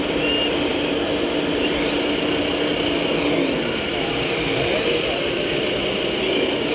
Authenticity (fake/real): real